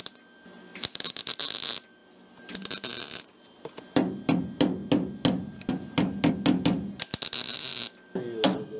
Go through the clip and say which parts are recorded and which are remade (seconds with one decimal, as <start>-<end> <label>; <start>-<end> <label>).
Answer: 0.0-0.7 recorded; 0.7-1.2 remade; 1.2-8.8 recorded